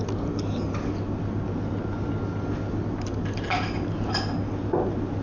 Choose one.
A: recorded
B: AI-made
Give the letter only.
A